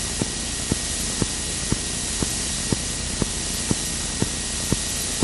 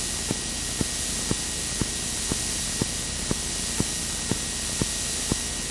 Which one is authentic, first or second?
second